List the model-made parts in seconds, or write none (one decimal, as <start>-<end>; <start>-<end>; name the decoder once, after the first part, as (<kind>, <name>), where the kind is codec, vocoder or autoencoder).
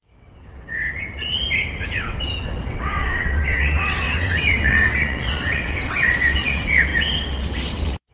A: 0.0-1.4 (vocoder, WaveNeXt); 1.9-8.1